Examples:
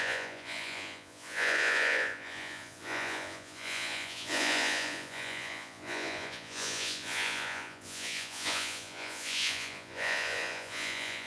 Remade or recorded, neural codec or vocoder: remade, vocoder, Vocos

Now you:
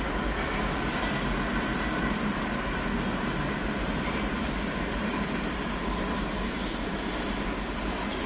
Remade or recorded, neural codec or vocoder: recorded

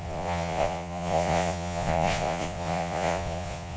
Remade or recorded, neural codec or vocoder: remade, vocoder, Vocos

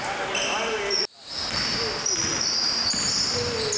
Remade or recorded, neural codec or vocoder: recorded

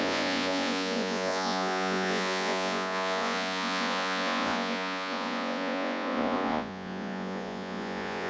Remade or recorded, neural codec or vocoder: remade, vocoder, Vocos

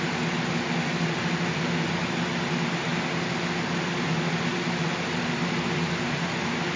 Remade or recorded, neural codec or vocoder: recorded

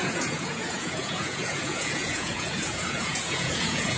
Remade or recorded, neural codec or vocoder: remade, vocoder, Vocos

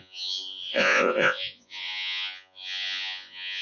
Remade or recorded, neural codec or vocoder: remade, vocoder, Vocos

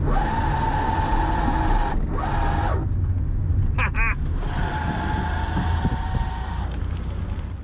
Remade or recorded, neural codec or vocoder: recorded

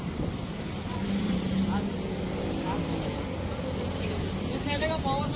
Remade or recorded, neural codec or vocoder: recorded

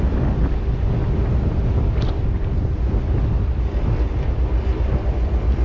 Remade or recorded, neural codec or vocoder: recorded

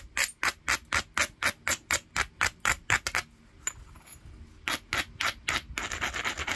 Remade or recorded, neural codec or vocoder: recorded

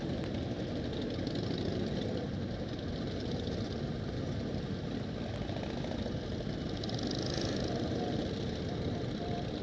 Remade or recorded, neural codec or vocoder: recorded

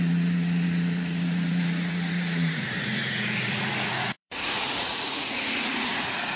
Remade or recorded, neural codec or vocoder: remade, vocoder, Vocos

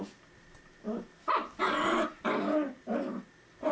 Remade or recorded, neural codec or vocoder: recorded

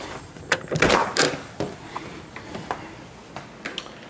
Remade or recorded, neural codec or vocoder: recorded